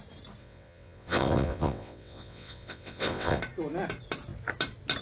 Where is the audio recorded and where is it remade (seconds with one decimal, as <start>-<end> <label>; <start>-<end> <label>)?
0.0-0.4 recorded; 0.4-3.4 remade; 3.4-5.0 recorded